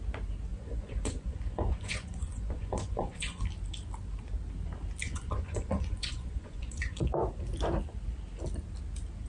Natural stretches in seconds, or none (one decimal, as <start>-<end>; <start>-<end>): 0.0-0.5; 3.4-5.0; 7.1-9.3